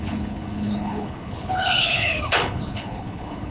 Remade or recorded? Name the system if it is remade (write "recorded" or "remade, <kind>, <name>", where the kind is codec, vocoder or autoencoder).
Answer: remade, codec, HILCodec